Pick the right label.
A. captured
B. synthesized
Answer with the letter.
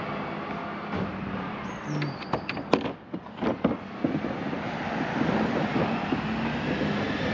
A